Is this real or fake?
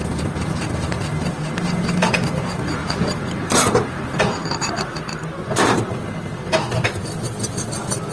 real